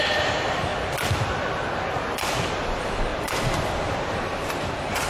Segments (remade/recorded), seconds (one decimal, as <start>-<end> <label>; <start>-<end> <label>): 0.0-0.7 remade; 0.7-2.1 recorded; 2.1-5.1 remade